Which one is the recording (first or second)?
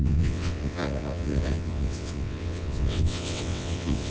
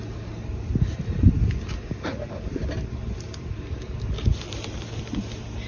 second